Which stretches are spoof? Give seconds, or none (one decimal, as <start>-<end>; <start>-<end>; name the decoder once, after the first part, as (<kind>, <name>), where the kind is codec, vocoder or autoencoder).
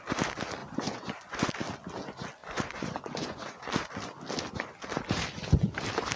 0.6-1.5 (vocoder, Vocos); 2.4-3.7